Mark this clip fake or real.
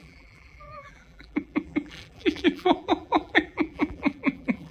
fake